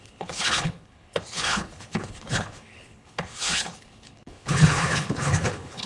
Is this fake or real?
fake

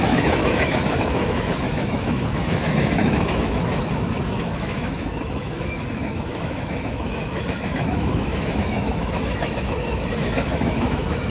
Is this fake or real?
fake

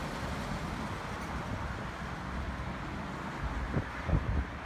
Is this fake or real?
real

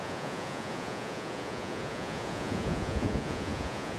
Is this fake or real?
fake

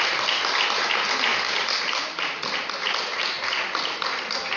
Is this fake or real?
real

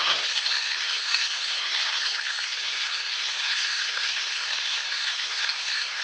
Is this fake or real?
fake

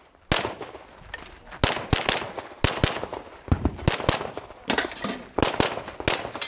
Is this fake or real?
real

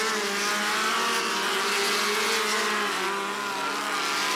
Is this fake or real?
real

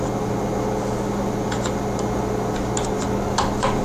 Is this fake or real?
real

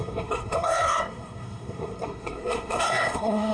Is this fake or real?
fake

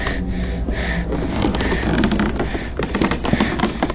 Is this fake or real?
real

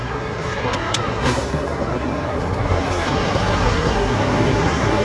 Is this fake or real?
fake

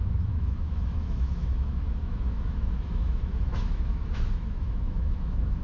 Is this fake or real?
fake